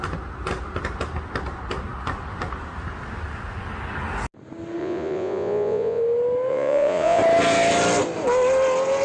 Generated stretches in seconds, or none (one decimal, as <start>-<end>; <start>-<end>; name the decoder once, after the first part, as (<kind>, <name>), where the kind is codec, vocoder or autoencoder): 4.8-6.0 (vocoder, Vocos); 6.5-7.2